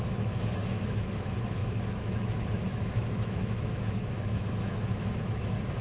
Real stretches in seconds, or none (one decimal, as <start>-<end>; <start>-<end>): none